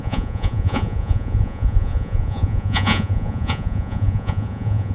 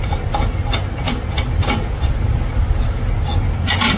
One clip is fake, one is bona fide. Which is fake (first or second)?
first